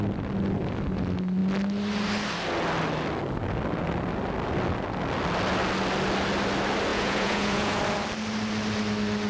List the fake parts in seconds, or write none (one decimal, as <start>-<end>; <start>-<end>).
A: 6.9-7.8